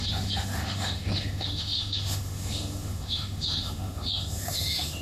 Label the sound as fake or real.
fake